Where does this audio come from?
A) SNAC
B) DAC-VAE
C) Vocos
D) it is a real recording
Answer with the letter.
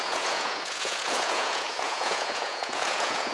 C